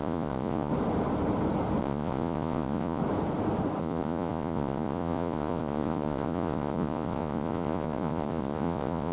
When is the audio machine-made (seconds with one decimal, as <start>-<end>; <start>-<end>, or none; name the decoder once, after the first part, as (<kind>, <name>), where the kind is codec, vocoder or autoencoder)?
0.0-0.7 (vocoder, Vocos); 1.8-3.0; 3.8-9.1